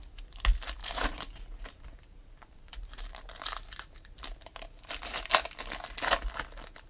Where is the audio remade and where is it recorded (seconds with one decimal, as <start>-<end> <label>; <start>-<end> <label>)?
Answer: 0.0-0.8 recorded; 0.8-4.9 remade; 4.9-6.9 recorded